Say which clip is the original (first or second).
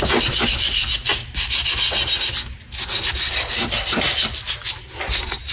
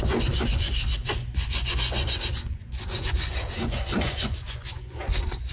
first